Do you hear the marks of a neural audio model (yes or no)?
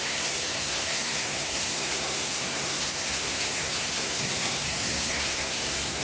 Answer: yes